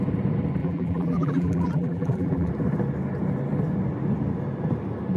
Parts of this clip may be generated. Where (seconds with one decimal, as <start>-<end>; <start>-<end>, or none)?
0.6-2.5